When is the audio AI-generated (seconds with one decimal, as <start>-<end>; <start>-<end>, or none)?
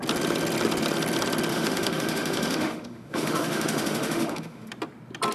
1.5-4.7